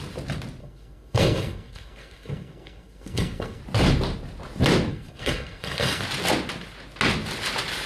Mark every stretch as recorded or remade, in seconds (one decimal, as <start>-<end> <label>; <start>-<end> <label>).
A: 0.0-0.6 recorded; 0.6-3.6 remade; 3.6-4.9 recorded; 4.9-6.0 remade; 6.0-7.9 recorded